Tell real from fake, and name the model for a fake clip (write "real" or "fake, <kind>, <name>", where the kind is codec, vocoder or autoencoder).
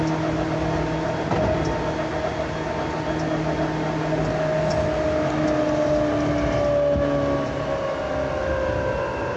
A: real